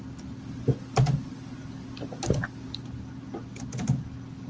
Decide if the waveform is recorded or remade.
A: recorded